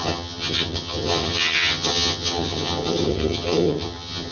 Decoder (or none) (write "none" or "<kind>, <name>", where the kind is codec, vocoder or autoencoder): vocoder, HiFi-GAN